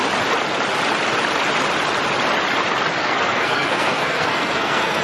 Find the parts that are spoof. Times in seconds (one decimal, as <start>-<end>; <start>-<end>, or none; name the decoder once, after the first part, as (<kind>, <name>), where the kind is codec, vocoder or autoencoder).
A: 3.0-5.0 (codec, SNAC)